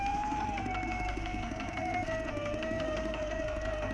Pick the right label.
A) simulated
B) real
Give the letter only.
A